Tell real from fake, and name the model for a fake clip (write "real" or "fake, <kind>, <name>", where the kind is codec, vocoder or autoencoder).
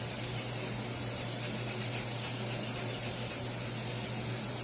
real